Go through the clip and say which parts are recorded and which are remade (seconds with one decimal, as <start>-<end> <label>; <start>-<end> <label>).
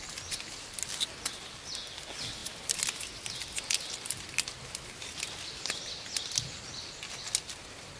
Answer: 0.0-8.0 recorded